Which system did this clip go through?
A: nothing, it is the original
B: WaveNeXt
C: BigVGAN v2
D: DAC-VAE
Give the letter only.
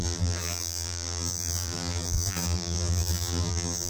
C